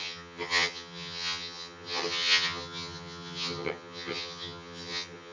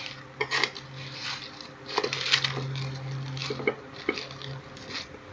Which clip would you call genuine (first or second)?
second